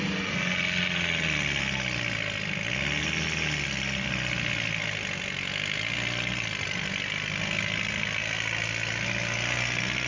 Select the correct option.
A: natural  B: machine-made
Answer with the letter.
A